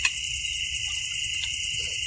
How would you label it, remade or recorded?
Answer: recorded